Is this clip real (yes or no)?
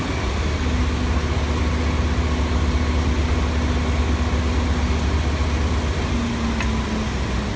yes